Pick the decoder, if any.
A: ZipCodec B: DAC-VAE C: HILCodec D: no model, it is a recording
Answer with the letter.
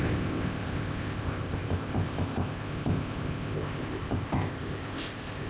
A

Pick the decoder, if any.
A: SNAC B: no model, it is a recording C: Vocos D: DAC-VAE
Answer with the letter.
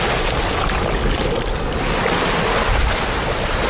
B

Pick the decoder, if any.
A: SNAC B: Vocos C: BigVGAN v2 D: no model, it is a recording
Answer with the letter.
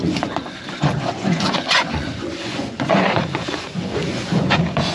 B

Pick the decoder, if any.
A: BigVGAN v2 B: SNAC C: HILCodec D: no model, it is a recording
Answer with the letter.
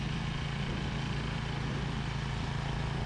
D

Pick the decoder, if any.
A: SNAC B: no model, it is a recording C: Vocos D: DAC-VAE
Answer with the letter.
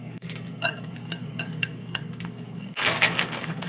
A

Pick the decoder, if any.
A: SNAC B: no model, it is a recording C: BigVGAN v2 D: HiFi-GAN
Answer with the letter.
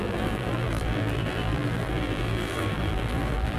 C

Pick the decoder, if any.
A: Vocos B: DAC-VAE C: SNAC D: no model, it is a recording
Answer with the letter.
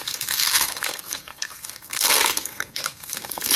C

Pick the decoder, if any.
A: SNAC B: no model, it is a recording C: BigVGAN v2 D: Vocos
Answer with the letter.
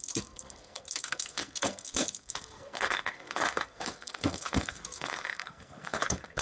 A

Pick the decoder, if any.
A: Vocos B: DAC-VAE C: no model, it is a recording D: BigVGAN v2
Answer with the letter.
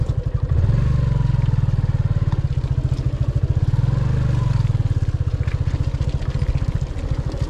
C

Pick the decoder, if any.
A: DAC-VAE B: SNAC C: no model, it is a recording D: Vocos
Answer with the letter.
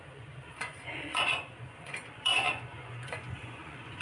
D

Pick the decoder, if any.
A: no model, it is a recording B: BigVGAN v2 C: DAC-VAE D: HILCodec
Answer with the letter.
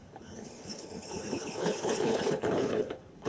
D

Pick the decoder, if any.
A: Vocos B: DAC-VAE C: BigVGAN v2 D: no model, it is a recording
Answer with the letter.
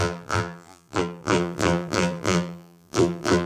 C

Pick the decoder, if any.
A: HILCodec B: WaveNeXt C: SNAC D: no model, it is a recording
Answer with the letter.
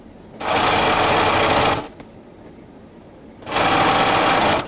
D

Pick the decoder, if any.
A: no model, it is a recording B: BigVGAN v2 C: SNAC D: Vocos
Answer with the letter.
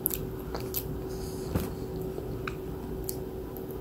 A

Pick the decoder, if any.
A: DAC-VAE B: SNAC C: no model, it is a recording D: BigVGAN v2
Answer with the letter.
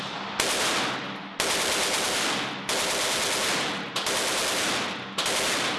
C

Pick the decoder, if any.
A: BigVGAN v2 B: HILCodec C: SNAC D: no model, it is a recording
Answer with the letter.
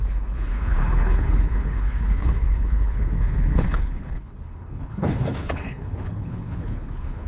B